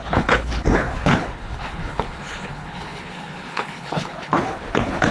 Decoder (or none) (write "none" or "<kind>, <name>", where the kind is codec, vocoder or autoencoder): codec, HILCodec